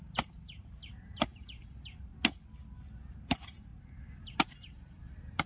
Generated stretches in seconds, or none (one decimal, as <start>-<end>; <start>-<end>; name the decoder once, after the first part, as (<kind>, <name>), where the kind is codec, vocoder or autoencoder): 0.0-2.1 (vocoder, BigVGAN v2); 3.1-3.7; 4.2-5.5